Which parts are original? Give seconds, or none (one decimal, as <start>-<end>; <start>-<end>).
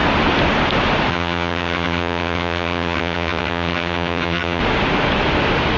0.0-1.1; 4.6-5.8